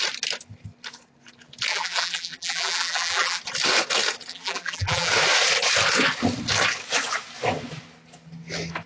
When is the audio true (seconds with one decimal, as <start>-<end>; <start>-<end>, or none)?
0.0-1.7; 3.4-4.3; 5.1-8.9